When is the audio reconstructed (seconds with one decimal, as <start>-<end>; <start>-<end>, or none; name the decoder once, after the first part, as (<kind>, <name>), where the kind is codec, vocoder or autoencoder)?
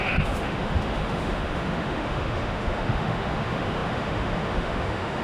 0.0-5.2 (autoencoder, DAC-VAE)